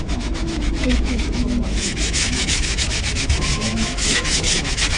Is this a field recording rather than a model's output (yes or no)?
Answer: no